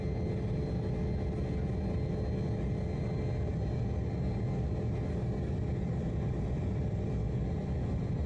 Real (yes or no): yes